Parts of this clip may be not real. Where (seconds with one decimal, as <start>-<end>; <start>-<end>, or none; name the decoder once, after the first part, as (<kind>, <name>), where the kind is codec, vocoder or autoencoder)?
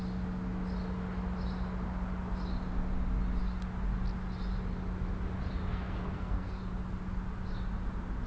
5.7-6.6 (codec, SNAC)